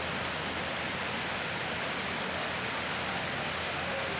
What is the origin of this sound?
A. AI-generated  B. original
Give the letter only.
B